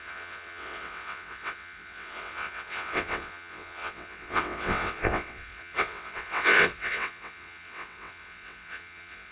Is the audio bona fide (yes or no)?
no